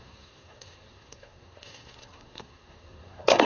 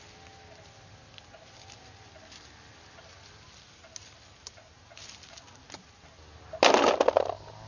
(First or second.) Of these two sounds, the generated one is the first